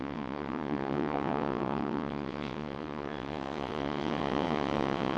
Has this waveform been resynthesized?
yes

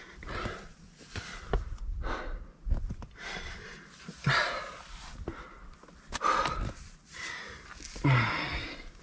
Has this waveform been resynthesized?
no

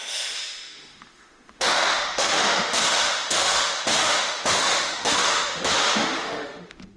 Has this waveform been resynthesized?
yes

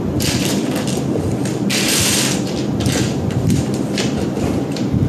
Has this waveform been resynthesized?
yes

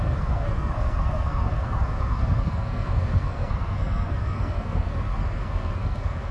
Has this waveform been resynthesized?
yes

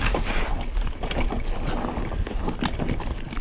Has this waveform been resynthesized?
no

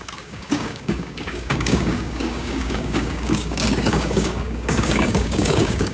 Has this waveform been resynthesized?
yes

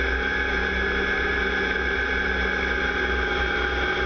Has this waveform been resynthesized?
no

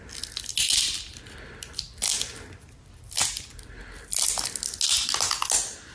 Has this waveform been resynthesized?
no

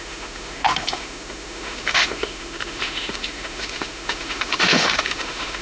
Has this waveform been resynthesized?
yes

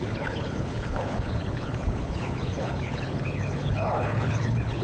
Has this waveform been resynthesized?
yes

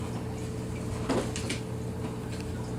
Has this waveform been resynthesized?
no